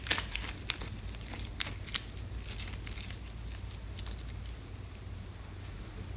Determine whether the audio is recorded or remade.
recorded